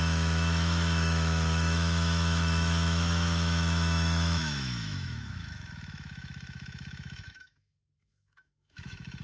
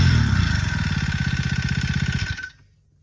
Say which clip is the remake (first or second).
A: first